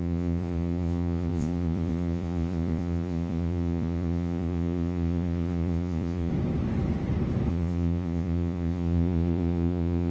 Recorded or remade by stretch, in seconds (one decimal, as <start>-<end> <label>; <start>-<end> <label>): 0.0-6.3 remade; 6.3-7.5 recorded; 7.5-10.1 remade